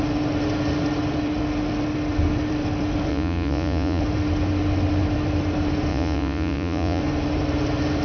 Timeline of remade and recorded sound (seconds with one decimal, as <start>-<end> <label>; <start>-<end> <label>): 0.0-3.1 recorded; 3.1-4.0 remade; 4.0-5.9 recorded; 5.9-7.0 remade; 7.0-8.0 recorded